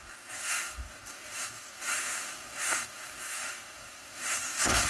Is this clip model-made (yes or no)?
yes